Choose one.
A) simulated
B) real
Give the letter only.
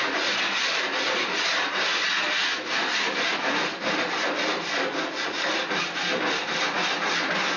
B